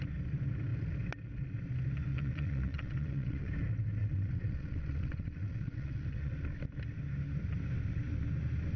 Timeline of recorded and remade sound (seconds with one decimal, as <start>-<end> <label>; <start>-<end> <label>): 0.0-2.1 recorded; 2.1-3.5 remade; 3.5-4.0 recorded; 4.0-6.4 remade; 6.4-8.8 recorded